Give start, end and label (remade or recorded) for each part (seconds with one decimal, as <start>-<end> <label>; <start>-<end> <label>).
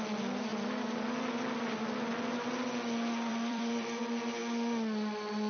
0.0-0.5 recorded; 0.5-1.7 remade; 1.7-3.3 recorded; 3.3-4.0 remade; 4.0-5.5 recorded